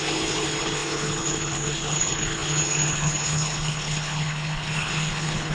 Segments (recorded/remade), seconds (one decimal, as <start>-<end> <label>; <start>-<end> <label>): 0.0-5.5 remade